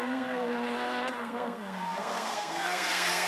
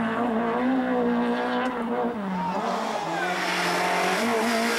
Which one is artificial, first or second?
first